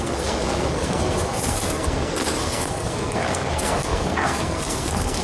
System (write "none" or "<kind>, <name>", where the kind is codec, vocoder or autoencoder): codec, SNAC